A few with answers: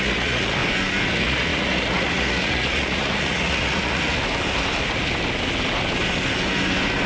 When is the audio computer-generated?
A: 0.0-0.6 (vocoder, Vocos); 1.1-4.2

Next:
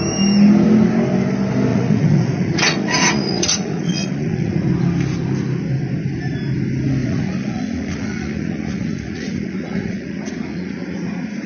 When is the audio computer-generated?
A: 1.7-4.7 (vocoder, Vocos); 7.0-11.5

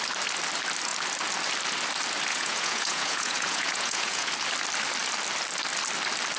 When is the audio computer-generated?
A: 2.3-4.3 (vocoder, Vocos)

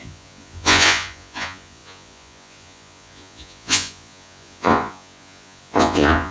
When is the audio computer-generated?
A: 0.0-6.3 (vocoder, Vocos)

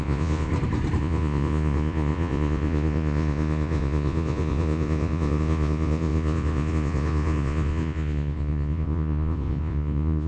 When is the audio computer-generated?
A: 0.0-0.5 (vocoder, Vocos); 1.0-10.3